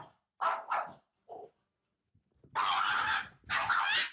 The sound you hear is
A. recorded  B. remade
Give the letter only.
A